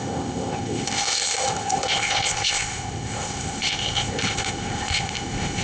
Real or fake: fake